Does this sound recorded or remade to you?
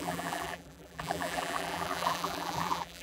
remade